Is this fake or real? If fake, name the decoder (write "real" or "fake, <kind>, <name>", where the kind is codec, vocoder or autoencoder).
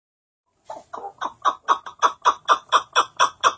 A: real